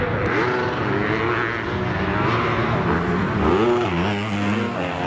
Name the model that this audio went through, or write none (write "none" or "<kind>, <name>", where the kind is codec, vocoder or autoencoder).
none